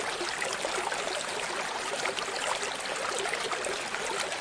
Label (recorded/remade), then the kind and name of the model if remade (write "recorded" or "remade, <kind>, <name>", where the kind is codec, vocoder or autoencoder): recorded